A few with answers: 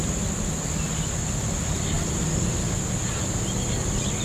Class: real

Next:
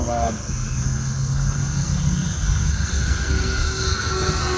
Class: fake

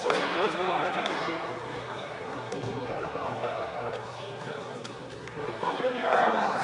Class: fake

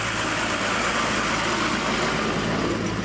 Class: real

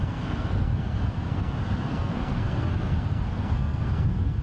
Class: fake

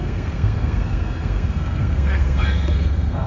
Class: fake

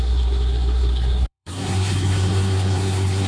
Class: fake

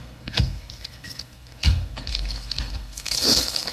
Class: fake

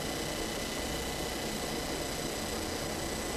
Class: real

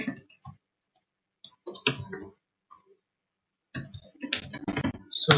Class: real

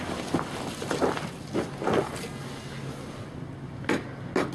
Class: real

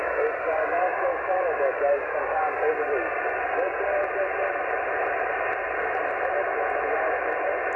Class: real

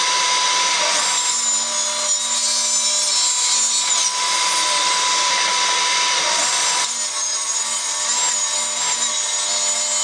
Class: real